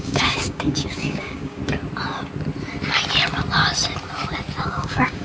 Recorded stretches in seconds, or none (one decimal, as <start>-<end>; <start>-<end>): 1.6-4.6